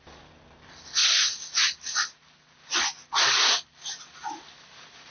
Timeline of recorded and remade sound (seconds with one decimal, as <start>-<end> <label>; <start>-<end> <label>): 0.0-5.1 recorded